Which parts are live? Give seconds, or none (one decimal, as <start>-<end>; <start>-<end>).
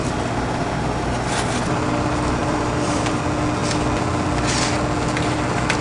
0.0-2.4; 3.2-5.8